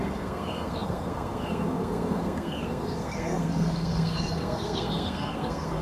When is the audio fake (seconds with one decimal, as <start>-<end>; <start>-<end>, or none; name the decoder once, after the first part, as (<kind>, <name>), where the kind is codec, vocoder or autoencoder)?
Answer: 0.0-5.8 (codec, SNAC)